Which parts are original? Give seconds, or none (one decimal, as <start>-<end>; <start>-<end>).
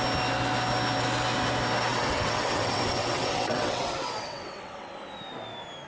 0.0-1.9; 4.9-5.9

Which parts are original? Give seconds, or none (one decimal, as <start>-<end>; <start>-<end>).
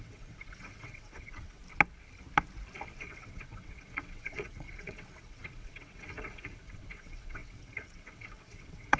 1.6-3.0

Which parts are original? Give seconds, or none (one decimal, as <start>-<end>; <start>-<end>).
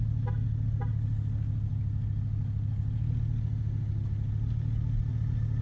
0.0-5.6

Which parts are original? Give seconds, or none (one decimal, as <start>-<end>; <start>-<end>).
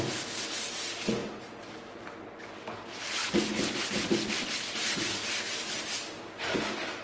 0.0-7.0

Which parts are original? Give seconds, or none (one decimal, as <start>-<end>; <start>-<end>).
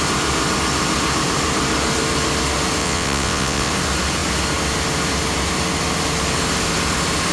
0.0-2.8; 3.7-7.3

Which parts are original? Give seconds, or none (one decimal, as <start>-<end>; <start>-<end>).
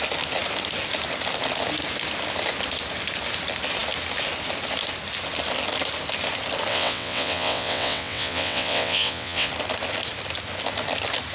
0.0-6.7; 9.5-11.3